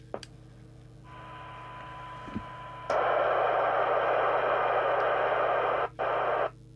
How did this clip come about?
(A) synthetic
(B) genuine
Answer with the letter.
B